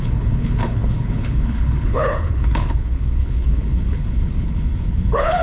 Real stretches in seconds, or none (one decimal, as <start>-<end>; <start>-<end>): none